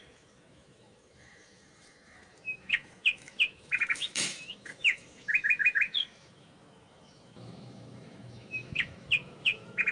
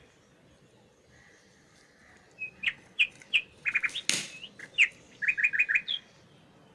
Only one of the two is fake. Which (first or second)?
first